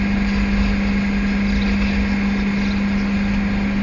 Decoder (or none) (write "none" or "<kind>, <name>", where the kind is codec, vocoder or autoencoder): none